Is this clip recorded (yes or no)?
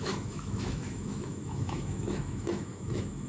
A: no